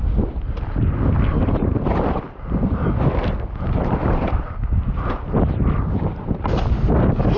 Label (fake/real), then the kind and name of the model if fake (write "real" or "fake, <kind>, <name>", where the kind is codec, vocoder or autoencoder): real